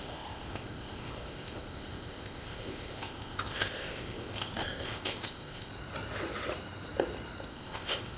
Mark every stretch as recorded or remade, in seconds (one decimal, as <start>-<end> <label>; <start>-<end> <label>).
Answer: 0.0-5.7 remade; 5.7-7.5 recorded; 7.5-8.2 remade